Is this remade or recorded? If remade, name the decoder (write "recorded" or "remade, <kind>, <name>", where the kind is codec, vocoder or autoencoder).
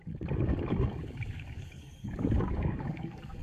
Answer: remade, codec, DAC